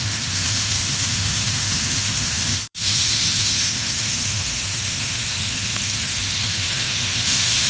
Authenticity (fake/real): fake